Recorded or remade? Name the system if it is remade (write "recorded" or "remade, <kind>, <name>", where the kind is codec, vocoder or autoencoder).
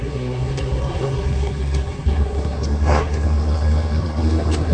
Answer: remade, codec, SNAC